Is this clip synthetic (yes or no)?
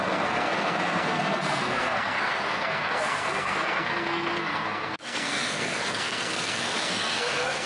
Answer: yes